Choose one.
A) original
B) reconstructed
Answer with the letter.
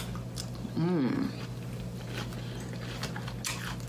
A